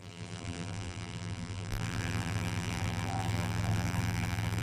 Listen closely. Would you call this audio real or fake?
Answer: fake